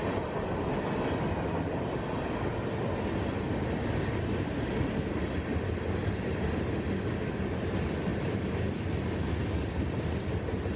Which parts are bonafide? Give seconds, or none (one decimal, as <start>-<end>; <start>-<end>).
0.0-10.8